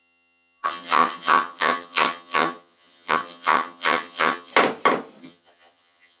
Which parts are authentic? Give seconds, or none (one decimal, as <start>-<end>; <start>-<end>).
4.5-5.2